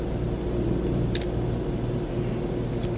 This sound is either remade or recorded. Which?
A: recorded